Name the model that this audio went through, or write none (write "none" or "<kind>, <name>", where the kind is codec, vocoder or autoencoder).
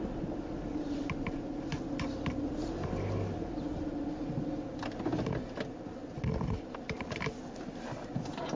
none